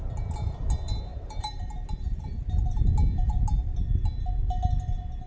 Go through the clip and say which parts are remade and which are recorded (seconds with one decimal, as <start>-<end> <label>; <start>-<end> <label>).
0.0-1.1 recorded; 1.1-1.7 remade; 1.7-5.3 recorded